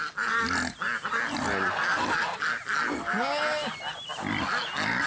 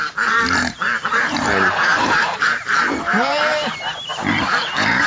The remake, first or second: second